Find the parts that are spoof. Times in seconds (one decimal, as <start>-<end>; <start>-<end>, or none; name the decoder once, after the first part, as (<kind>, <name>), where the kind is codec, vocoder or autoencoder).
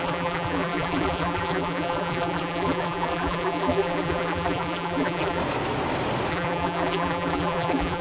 0.0-5.4 (vocoder, BigVGAN v2); 6.3-8.0